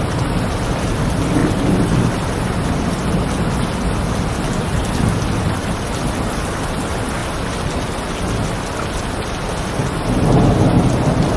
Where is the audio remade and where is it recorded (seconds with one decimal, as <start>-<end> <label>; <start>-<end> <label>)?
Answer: 0.0-11.4 recorded